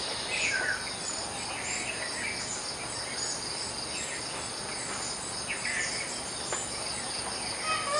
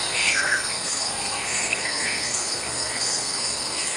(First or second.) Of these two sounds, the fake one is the second